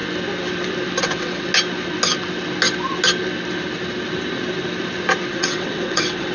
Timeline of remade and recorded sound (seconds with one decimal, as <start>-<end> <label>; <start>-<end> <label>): 0.0-1.0 recorded; 1.0-1.5 remade; 1.5-5.3 recorded; 5.3-6.3 remade